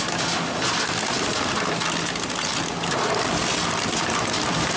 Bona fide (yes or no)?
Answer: yes